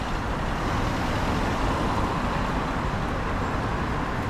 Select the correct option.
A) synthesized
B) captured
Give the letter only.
B